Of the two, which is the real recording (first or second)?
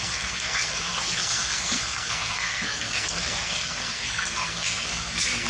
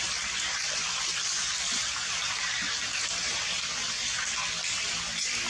second